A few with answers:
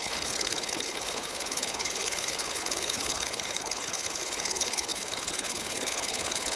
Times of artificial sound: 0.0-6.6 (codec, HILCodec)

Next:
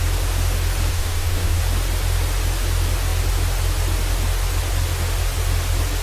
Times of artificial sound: 0.9-1.6 (codec, DAC)

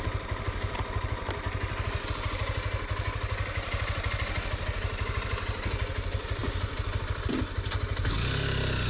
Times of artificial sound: none

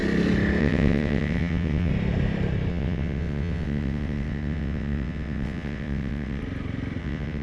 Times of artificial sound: 0.6-1.9 (vocoder, WaveNeXt); 2.7-6.4; 7.0-7.4

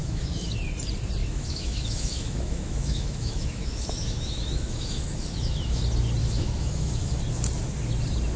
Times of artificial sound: 0.0-0.6 (autoencoder, DAC-VAE); 1.2-5.8; 6.2-7.2

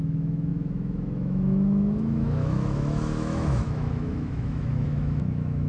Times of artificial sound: 0.0-5.7 (autoencoder, DAC-VAE)